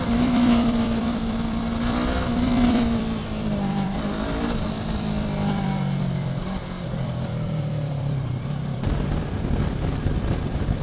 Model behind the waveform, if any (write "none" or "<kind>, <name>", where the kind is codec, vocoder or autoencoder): vocoder, BigVGAN v2